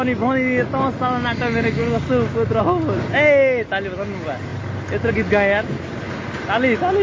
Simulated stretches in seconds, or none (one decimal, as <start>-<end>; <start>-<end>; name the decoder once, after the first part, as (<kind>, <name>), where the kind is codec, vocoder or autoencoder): none